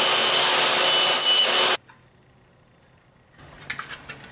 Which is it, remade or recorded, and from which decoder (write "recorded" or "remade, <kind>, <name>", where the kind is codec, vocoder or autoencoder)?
recorded